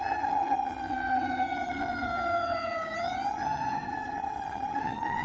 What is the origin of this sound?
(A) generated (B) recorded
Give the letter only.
A